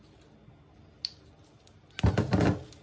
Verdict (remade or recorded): recorded